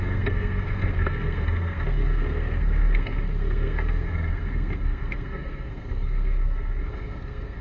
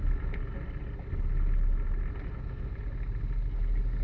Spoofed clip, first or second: first